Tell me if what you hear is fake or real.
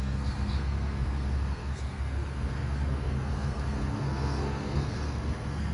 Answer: fake